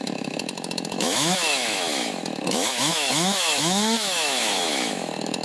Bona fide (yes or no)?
no